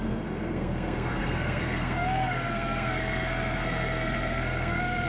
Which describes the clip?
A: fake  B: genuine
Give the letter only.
A